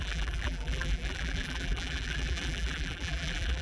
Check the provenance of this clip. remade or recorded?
remade